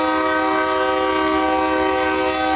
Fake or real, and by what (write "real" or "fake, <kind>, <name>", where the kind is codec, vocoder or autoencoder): real